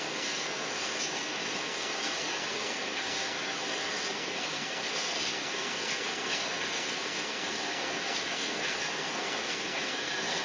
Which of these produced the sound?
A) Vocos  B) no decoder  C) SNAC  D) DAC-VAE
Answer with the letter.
C